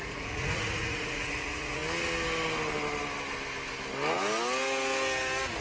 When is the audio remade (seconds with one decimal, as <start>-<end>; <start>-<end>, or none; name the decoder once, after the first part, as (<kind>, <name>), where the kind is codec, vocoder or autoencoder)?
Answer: 0.0-1.8 (vocoder, Vocos)